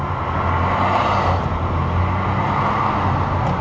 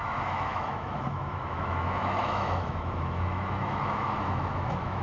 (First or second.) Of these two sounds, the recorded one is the first